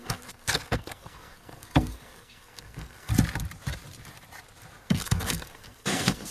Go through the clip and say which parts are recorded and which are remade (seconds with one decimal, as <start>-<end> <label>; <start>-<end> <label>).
0.0-3.1 remade; 3.1-4.8 recorded; 4.8-6.3 remade